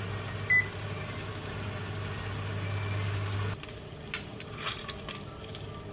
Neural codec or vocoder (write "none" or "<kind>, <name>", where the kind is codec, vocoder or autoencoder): none